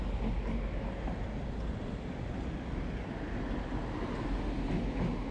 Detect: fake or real real